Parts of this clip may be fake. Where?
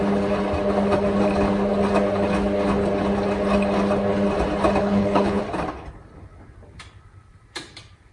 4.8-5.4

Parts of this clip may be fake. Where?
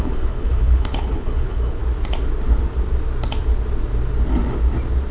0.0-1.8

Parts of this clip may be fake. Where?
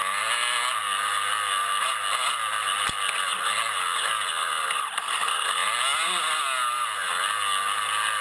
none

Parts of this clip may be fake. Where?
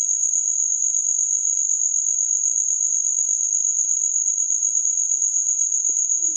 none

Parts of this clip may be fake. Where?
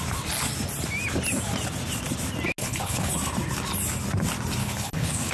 2.6-3.1; 4.6-5.3